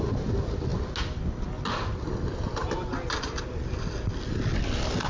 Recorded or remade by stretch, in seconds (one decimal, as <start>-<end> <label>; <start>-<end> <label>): 0.0-5.1 recorded